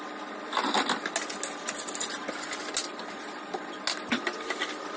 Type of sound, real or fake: real